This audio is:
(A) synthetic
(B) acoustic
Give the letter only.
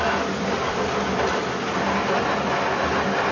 B